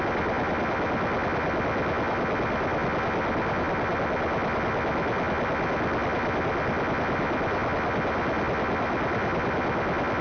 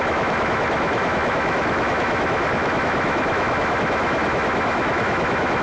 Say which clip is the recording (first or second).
first